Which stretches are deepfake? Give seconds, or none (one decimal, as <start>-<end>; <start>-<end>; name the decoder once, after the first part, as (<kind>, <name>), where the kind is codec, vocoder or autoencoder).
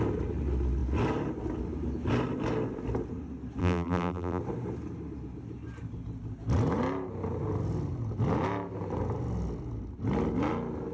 3.6-4.4 (vocoder, BigVGAN v2)